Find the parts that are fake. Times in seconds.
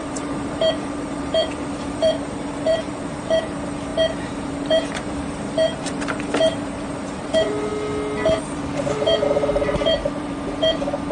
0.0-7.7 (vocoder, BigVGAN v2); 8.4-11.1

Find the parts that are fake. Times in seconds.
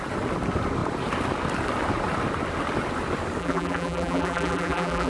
3.4-5.1 (vocoder, BigVGAN v2)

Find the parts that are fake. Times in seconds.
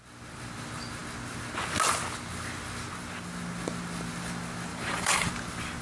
4.7-5.3 (vocoder, BigVGAN v2)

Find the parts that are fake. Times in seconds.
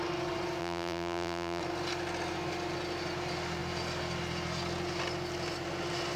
0.6-1.6 (vocoder, BigVGAN v2)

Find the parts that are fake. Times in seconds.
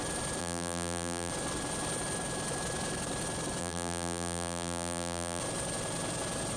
0.4-1.3 (vocoder, BigVGAN v2); 3.6-5.4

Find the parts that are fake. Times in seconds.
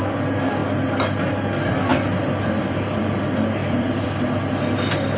1.9-3.0 (vocoder, BigVGAN v2); 3.6-4.4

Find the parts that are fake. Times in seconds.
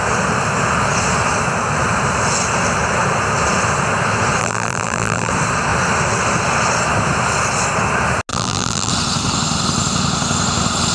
4.4-5.3 (vocoder, BigVGAN v2); 8.3-8.9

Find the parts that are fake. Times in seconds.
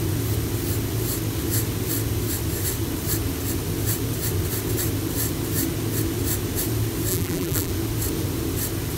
7.1-7.7 (vocoder, BigVGAN v2)